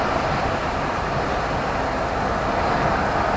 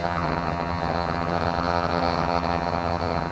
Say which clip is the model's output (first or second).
second